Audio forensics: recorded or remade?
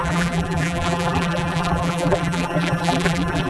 remade